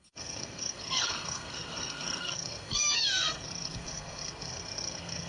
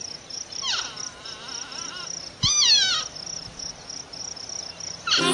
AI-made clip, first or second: first